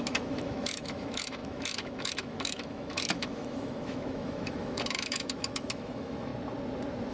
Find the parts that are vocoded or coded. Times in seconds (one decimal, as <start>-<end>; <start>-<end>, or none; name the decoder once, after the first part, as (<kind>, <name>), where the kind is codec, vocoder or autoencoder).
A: 0.0-6.3 (autoencoder, DAC-VAE)